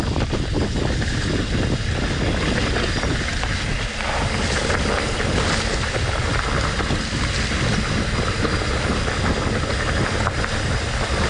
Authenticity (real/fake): real